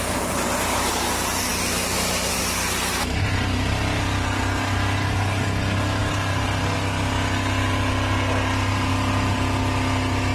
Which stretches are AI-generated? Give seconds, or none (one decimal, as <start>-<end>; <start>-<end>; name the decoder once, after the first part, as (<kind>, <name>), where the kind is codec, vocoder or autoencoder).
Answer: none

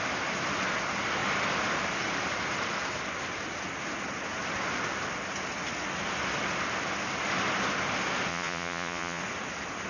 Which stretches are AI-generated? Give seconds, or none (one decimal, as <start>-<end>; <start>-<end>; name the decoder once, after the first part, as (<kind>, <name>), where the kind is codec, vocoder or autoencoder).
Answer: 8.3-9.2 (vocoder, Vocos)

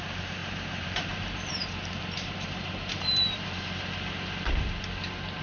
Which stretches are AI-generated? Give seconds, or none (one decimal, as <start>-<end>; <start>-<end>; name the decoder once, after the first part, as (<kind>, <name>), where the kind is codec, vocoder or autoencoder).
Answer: 0.4-3.6 (vocoder, BigVGAN v2)

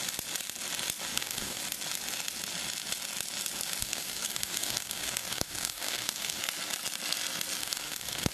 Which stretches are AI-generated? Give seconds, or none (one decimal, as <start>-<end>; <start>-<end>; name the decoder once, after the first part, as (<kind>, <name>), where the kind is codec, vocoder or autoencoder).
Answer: 1.1-1.6 (codec, DAC); 3.8-6.4; 7.6-8.3

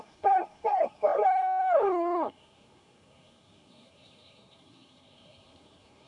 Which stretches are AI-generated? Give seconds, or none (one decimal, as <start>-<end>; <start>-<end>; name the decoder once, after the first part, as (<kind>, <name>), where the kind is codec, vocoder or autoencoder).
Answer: 0.0-6.1 (codec, SNAC)

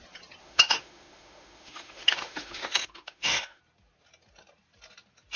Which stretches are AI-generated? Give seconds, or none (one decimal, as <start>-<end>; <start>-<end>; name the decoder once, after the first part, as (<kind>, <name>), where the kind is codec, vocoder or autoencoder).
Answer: 0.4-3.6 (autoencoder, DAC-VAE)

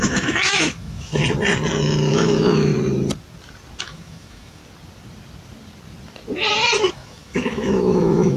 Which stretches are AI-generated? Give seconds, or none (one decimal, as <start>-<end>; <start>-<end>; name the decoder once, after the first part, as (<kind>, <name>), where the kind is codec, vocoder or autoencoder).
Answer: 0.0-1.1 (autoencoder, DAC-VAE); 2.1-2.7; 3.8-4.6; 6.9-8.4

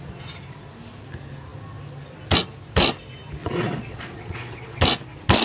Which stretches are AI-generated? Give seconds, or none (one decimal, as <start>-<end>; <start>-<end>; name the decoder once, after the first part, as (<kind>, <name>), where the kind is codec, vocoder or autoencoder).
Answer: 3.4-4.8 (vocoder, Vocos)